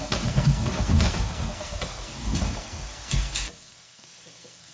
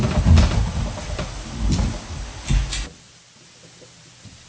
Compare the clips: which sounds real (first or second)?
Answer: second